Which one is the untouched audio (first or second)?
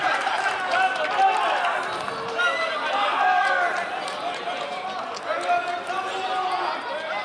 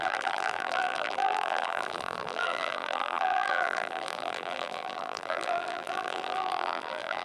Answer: first